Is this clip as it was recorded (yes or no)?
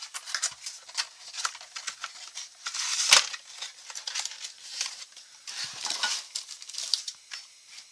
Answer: yes